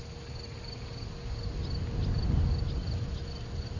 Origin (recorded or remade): recorded